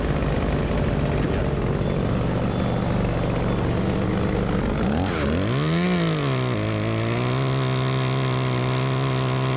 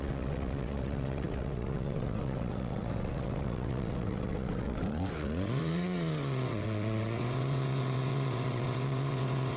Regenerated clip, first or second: second